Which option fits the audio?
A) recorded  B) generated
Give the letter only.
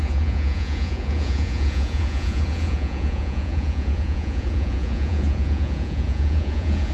B